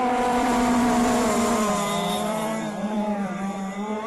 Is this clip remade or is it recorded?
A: remade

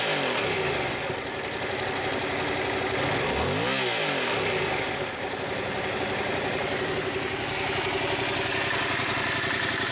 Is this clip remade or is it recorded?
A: recorded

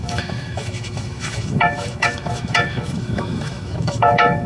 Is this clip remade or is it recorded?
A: remade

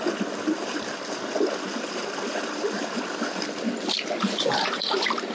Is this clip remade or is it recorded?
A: recorded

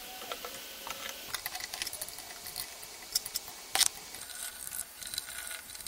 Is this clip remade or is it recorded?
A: recorded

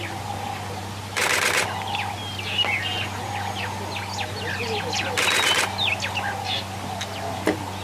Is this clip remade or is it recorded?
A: recorded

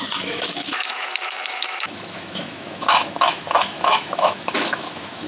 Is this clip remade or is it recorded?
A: remade